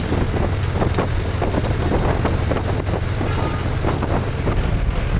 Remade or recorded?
recorded